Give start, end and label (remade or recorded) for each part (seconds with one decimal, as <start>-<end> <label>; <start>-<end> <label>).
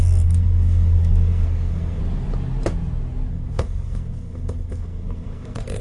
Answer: 0.0-2.0 remade; 2.0-3.3 recorded; 3.3-5.8 remade